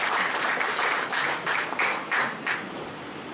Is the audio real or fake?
real